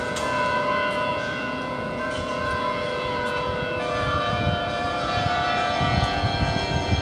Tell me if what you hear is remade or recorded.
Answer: remade